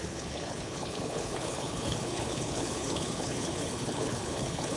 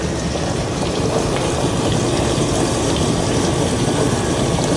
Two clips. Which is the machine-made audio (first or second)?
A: first